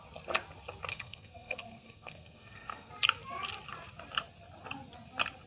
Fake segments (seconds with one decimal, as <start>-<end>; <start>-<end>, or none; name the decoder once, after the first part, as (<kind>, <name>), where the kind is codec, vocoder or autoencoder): 0.9-2.9 (codec, SNAC)